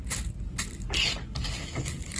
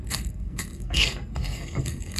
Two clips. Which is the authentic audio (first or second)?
first